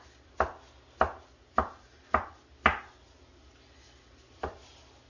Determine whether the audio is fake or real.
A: real